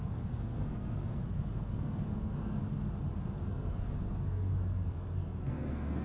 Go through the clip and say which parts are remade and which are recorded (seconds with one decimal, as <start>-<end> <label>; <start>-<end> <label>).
0.0-2.6 remade; 2.6-3.5 recorded; 3.5-6.0 remade

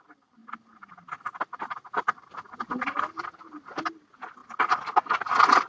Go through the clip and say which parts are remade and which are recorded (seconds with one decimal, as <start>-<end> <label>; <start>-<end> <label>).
0.0-5.7 recorded

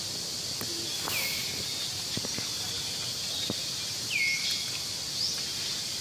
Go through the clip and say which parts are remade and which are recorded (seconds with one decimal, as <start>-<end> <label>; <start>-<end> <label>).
0.0-6.0 recorded

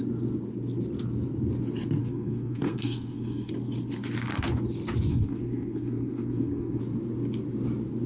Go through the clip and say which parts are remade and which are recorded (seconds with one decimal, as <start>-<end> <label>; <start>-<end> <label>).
0.0-2.0 recorded; 2.0-3.5 remade; 3.5-5.1 recorded; 5.1-6.8 remade; 6.8-8.1 recorded